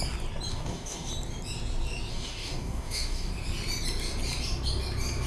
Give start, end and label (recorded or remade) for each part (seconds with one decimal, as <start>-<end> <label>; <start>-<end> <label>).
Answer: 0.0-0.5 recorded; 0.5-1.1 remade; 1.1-2.1 recorded; 2.1-3.3 remade; 3.3-5.3 recorded